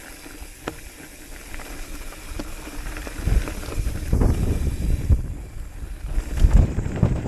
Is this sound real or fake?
real